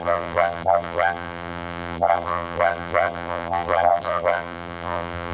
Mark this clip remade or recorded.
remade